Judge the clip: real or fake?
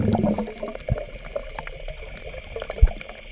real